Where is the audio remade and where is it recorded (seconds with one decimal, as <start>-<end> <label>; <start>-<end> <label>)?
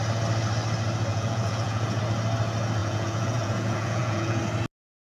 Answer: 0.0-1.1 recorded; 1.1-2.0 remade; 2.0-2.8 recorded; 2.8-4.4 remade; 4.4-5.1 recorded